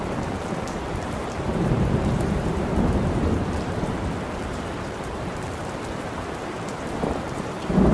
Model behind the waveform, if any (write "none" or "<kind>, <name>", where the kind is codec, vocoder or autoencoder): vocoder, BigVGAN v2